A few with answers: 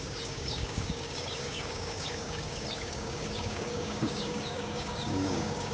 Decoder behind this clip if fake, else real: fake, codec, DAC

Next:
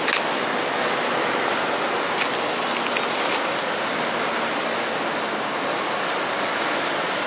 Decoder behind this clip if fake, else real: real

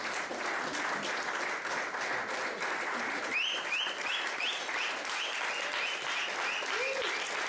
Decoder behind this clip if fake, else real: real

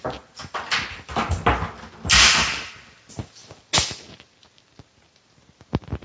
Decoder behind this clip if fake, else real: real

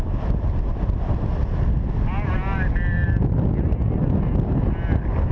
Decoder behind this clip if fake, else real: real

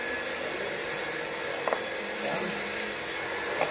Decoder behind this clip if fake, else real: real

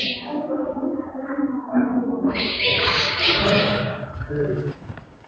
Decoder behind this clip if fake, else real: fake, codec, DAC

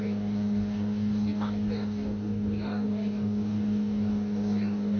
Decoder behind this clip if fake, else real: fake, codec, DAC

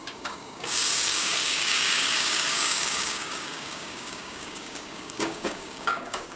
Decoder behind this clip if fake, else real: fake, codec, DAC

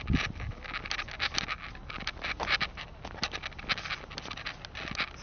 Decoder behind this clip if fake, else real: real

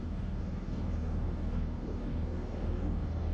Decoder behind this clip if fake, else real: fake, codec, DAC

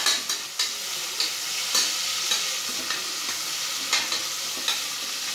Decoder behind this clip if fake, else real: real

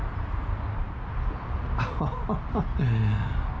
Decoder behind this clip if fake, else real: real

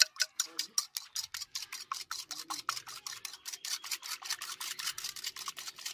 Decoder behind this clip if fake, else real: real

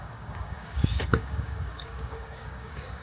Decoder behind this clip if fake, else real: fake, codec, DAC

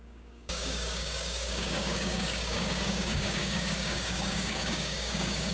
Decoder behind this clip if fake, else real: fake, codec, DAC